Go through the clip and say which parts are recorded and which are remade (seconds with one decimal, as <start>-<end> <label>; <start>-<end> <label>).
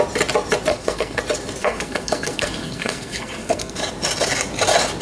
0.0-0.7 recorded; 0.7-1.2 remade; 1.2-1.6 recorded; 1.6-3.8 remade; 3.8-5.0 recorded